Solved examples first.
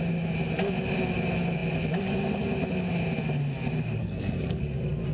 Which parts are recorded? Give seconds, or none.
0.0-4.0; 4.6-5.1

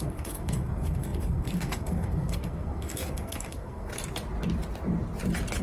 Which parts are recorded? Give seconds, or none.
3.9-5.6

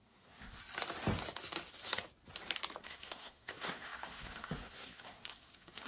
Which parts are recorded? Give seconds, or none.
0.6-2.8

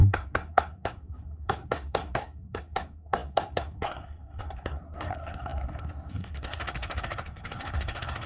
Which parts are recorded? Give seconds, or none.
none

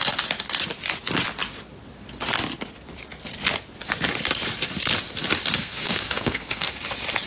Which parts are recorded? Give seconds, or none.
0.0-5.6; 6.7-7.3